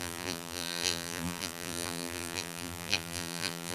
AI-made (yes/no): yes